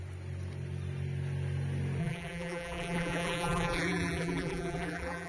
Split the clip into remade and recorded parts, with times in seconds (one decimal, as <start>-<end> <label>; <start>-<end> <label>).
0.0-2.0 recorded; 2.0-5.3 remade